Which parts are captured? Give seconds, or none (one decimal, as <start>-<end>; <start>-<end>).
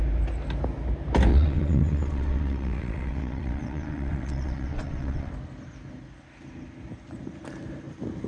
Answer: 0.0-1.3; 5.3-8.3